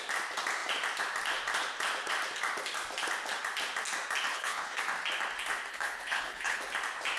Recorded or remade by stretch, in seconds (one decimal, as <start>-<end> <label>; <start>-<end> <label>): 0.0-4.3 recorded; 4.3-4.8 remade; 4.8-5.7 recorded; 5.7-6.6 remade; 6.6-7.2 recorded